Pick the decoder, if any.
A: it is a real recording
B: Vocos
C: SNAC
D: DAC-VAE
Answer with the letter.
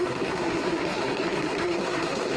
C